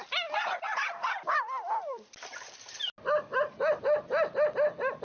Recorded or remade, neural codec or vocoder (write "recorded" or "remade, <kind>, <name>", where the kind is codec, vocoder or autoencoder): recorded